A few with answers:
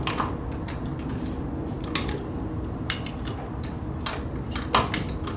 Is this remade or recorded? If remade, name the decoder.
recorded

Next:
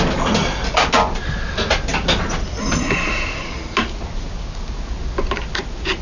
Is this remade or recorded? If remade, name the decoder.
recorded